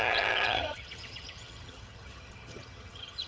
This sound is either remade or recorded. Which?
remade